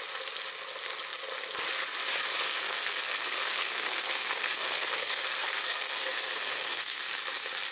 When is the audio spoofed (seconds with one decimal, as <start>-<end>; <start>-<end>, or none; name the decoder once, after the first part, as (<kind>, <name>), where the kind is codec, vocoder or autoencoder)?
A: 2.5-7.0 (codec, SNAC)